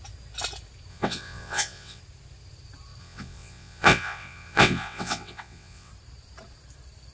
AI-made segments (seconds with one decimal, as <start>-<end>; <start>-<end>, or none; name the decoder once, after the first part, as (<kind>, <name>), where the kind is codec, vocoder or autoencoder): 0.9-2.0 (vocoder, WaveNeXt); 3.0-5.9